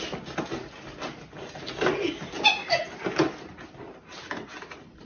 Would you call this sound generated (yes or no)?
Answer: no